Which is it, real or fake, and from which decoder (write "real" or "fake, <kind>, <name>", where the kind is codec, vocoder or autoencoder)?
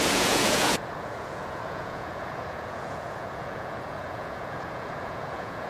fake, vocoder, Vocos